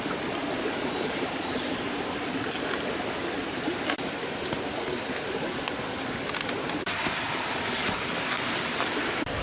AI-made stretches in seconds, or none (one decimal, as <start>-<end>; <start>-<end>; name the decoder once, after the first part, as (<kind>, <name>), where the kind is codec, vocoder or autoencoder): 0.4-2.4 (vocoder, BigVGAN v2)